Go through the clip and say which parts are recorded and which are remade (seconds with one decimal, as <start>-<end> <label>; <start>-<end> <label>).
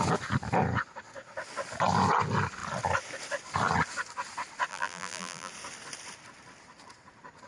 0.0-4.7 recorded; 4.7-5.5 remade; 5.5-7.5 recorded